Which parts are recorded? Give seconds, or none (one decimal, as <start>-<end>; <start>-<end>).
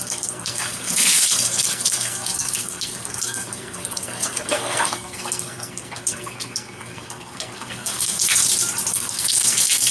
8.4-8.9